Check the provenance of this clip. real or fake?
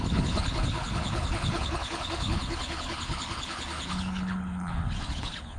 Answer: fake